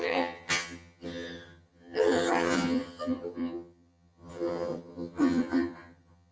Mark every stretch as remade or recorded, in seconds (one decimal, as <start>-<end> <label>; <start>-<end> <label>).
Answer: 0.0-6.3 remade